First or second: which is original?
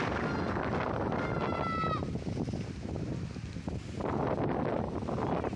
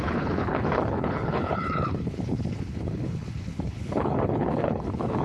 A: first